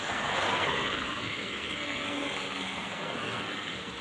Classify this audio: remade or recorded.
remade